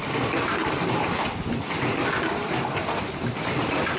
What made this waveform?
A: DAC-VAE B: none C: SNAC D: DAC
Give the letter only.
B